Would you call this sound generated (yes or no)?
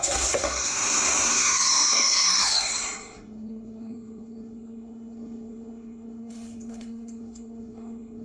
yes